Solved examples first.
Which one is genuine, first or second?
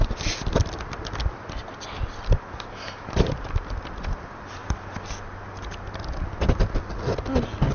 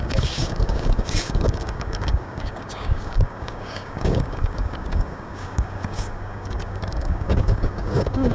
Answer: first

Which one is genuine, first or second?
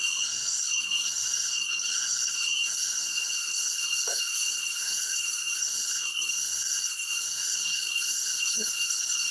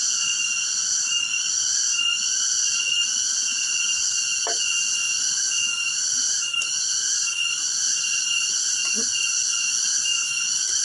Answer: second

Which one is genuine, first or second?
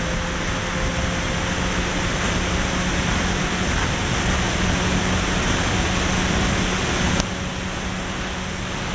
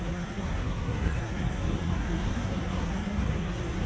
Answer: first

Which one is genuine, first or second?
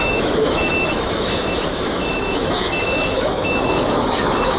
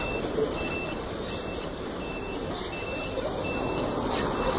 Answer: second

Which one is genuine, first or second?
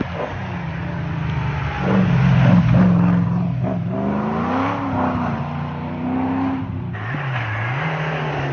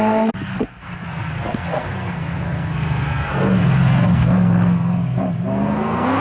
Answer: first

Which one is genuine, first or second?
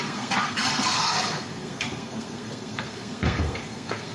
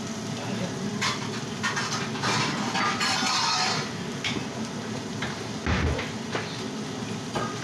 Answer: second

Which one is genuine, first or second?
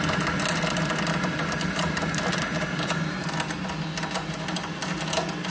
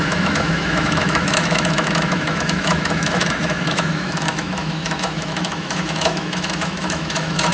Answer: first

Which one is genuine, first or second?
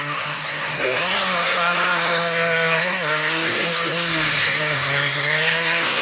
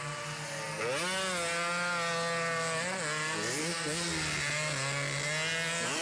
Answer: second